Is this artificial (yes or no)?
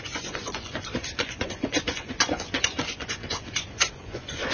yes